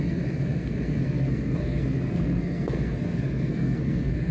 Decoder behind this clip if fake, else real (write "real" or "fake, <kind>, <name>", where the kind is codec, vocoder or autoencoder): fake, codec, SNAC